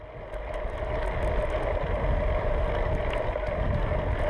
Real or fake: real